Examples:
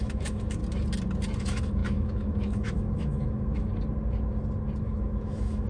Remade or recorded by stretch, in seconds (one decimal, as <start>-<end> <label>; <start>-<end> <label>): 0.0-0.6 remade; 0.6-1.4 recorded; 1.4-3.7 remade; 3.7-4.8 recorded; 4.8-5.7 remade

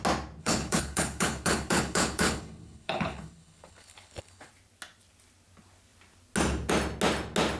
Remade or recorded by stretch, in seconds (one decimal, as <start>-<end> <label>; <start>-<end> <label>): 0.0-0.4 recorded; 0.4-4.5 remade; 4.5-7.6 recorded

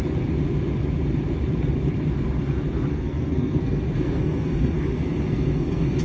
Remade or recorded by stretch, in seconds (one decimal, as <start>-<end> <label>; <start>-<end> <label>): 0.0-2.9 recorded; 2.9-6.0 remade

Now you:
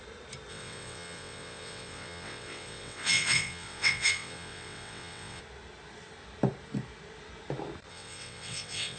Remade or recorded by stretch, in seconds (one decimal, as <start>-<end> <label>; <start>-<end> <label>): 0.0-0.5 recorded; 0.5-5.4 remade; 5.4-7.9 recorded; 7.9-9.0 remade